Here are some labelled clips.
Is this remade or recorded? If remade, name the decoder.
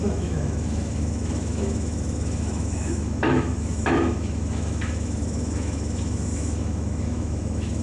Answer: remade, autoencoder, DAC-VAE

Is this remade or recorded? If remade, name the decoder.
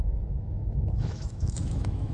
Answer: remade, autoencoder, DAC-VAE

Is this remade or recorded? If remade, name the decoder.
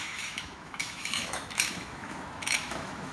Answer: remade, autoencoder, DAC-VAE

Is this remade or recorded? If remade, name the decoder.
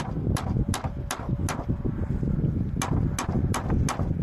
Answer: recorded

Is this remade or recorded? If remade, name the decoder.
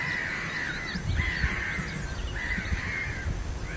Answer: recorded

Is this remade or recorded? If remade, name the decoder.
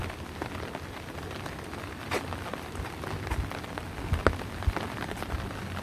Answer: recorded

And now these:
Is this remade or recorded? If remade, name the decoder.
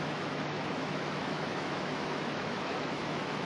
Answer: remade, autoencoder, DAC-VAE